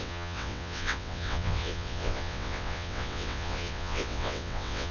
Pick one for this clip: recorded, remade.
remade